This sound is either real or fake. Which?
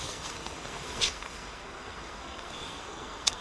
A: fake